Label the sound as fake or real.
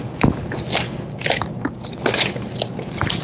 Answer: real